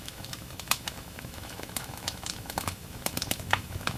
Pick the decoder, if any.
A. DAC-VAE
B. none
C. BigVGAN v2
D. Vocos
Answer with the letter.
A